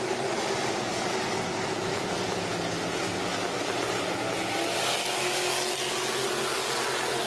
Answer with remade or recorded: recorded